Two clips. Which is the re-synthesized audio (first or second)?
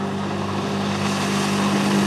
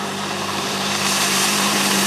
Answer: second